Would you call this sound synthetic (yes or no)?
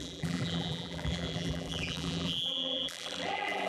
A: yes